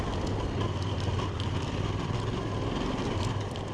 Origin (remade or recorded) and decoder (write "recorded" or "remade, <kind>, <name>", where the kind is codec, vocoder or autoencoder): recorded